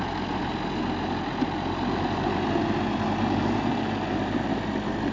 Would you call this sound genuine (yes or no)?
yes